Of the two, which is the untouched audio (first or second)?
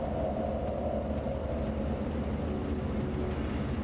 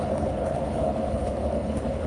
first